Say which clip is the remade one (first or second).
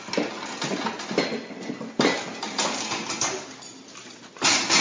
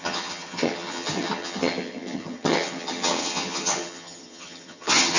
second